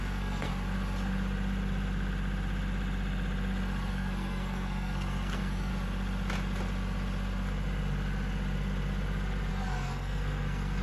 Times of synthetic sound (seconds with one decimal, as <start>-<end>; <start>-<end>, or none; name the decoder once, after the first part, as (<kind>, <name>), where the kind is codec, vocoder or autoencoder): 0.0-0.5 (codec, SNAC); 3.9-5.7; 9.5-10.8